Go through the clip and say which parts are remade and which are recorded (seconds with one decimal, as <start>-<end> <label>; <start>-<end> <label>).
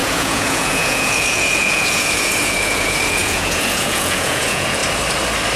0.0-4.8 remade; 4.8-5.6 recorded